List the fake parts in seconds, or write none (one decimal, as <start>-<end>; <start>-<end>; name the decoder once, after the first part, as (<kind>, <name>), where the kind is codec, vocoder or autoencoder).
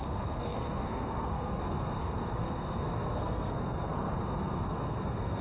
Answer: 0.0-5.4 (codec, SNAC)